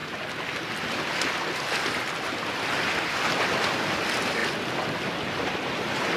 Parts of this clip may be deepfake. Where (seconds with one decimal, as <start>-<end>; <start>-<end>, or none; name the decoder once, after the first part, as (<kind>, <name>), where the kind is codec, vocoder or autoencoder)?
none